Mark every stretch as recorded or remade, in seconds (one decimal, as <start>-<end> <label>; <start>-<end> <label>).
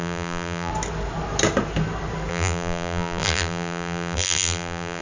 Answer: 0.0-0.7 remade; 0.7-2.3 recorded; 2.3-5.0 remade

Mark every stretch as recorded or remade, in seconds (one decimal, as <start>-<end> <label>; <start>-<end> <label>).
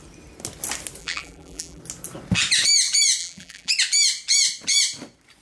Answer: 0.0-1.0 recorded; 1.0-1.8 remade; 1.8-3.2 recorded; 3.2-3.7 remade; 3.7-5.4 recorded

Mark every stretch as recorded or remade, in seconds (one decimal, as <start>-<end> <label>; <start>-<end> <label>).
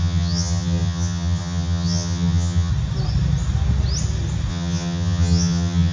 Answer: 0.0-2.7 remade; 2.7-4.5 recorded; 4.5-5.9 remade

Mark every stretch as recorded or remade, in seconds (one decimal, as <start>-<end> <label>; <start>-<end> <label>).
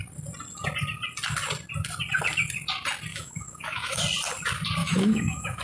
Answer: 0.0-3.1 recorded; 3.1-4.0 remade; 4.0-4.8 recorded; 4.8-5.6 remade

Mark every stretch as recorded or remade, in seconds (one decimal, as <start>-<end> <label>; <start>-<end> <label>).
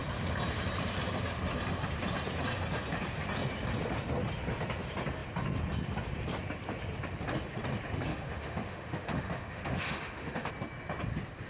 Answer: 0.0-8.1 recorded; 8.1-10.5 remade; 10.5-11.5 recorded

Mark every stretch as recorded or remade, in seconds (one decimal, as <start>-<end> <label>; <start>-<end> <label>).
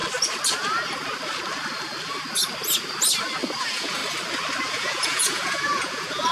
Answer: 0.0-3.6 recorded; 3.6-4.0 remade; 4.0-4.7 recorded; 4.7-6.3 remade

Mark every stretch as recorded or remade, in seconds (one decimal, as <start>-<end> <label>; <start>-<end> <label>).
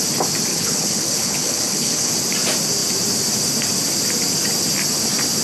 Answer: 0.0-0.5 recorded; 0.5-2.1 remade; 2.1-5.4 recorded